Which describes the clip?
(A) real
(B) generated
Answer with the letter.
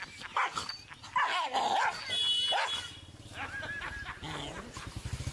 A